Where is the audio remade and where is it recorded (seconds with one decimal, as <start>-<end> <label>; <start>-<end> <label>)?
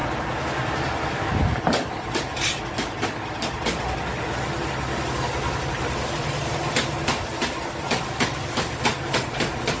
0.0-9.8 recorded